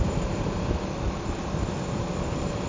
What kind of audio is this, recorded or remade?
remade